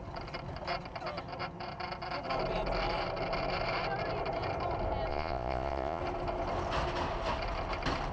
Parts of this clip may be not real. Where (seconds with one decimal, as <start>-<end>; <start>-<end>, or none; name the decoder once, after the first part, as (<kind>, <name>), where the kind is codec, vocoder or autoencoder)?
5.1-6.0 (vocoder, Vocos)